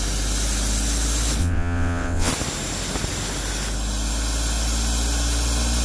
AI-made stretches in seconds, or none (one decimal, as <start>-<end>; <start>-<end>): 1.4-2.3